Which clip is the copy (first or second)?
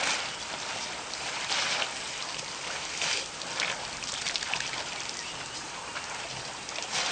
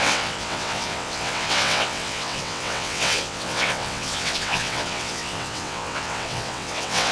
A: second